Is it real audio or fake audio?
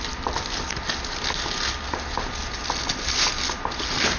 real